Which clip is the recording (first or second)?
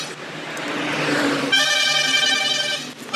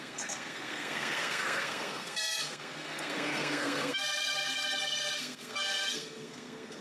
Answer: first